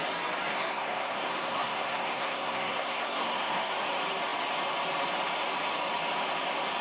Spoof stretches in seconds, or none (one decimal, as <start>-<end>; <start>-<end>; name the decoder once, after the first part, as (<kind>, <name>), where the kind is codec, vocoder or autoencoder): 0.5-3.7 (codec, SNAC)